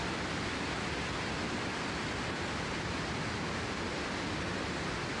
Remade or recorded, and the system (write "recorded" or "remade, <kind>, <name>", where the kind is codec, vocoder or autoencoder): recorded